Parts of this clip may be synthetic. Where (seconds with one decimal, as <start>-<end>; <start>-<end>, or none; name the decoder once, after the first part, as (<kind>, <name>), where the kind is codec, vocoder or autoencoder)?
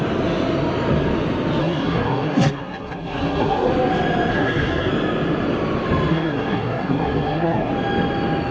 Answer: 1.6-3.7 (codec, SNAC); 4.3-4.9; 6.1-7.7